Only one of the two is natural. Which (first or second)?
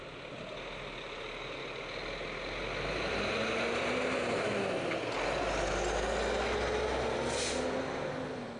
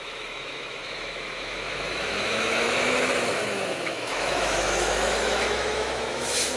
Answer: first